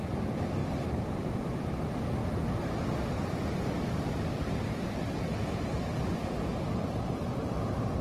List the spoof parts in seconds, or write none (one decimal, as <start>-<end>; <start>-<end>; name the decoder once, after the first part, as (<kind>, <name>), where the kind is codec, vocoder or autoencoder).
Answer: 0.6-1.3 (vocoder, BigVGAN v2)